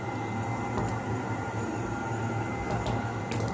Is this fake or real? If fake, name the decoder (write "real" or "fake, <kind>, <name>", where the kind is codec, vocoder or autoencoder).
real